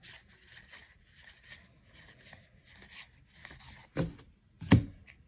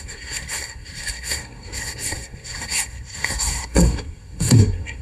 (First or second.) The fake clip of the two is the second